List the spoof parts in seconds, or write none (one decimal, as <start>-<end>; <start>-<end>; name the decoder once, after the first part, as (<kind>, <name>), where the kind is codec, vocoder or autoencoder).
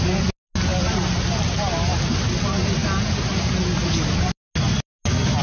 none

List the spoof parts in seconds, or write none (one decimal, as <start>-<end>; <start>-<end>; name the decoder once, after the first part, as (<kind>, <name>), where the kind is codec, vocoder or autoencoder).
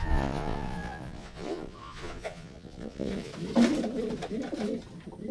0.0-3.3 (vocoder, Vocos)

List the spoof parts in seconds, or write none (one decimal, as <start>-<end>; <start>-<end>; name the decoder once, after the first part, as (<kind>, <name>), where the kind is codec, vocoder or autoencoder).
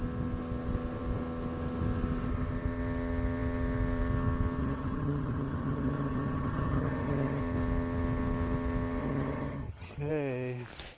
4.6-7.4 (vocoder, HiFi-GAN); 9.0-10.1